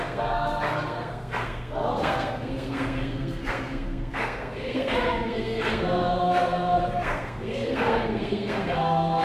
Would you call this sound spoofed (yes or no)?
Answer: yes